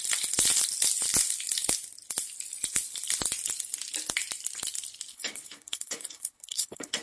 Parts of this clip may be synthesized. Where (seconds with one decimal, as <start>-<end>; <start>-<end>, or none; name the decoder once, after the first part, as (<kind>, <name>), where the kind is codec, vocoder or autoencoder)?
5.1-7.0 (codec, HILCodec)